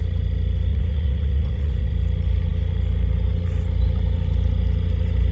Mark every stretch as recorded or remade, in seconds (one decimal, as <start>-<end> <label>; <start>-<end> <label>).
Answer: 0.0-0.7 recorded; 0.7-1.9 remade; 1.9-5.3 recorded